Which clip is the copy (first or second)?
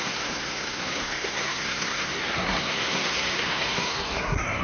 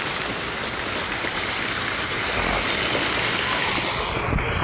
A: first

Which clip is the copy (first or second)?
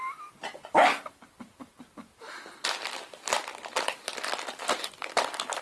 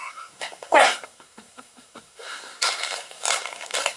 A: second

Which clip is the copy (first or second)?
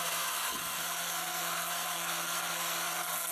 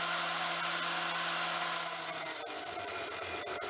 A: first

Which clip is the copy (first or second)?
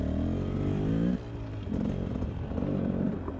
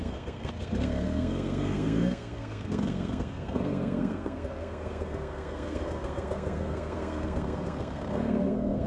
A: second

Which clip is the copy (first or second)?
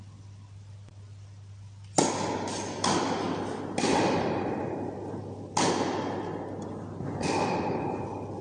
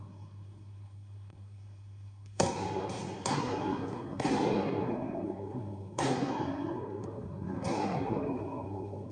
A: second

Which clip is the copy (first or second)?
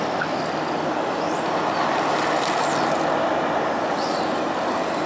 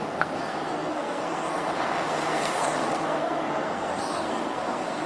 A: second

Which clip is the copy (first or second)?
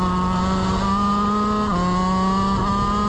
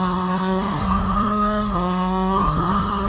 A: second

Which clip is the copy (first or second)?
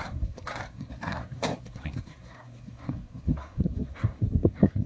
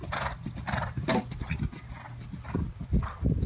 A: first